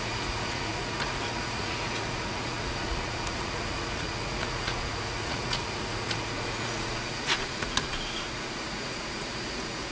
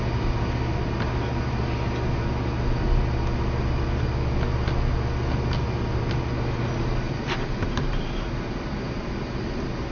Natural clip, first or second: second